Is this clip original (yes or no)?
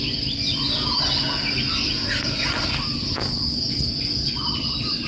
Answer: yes